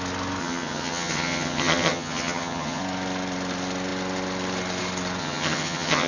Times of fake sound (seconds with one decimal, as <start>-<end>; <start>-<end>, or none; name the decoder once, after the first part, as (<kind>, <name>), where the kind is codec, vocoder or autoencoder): 0.4-2.8 (vocoder, HiFi-GAN); 5.2-6.1